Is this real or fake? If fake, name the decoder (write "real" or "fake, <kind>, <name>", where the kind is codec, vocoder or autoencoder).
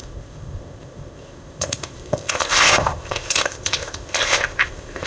fake, codec, ZipCodec